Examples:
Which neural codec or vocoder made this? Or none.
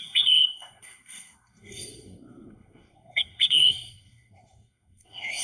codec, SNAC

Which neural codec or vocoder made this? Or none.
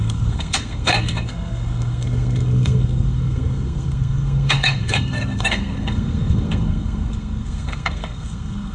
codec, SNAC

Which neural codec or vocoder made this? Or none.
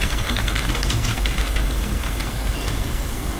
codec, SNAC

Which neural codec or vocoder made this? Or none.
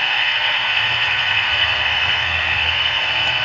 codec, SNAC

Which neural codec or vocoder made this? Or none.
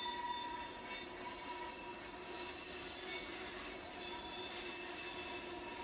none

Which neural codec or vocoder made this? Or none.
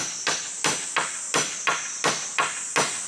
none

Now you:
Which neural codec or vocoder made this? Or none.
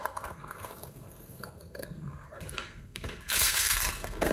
codec, SNAC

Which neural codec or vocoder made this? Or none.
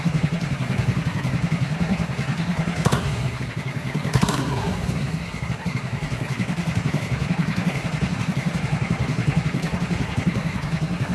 codec, SNAC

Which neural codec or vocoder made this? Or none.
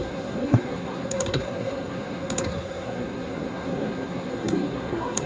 codec, SNAC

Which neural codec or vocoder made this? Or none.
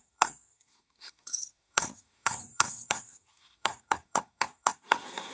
codec, SNAC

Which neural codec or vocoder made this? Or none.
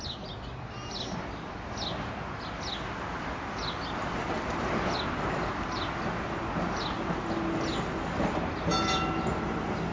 none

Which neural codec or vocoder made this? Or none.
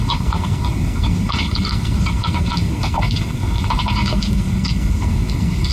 codec, SNAC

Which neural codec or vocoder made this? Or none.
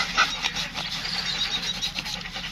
none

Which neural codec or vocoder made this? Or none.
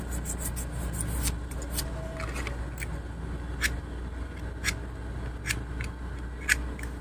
none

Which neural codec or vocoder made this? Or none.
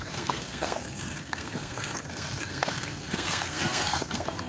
codec, SNAC